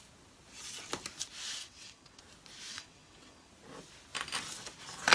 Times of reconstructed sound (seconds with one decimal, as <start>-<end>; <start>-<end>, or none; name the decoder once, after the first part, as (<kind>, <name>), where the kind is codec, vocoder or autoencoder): 1.6-2.2 (vocoder, WaveNeXt); 2.7-3.5